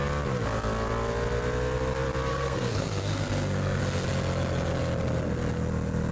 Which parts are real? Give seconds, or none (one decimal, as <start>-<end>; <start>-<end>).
0.0-2.3; 3.8-6.1